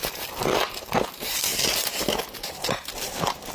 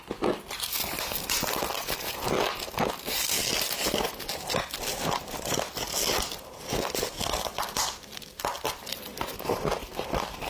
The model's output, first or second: first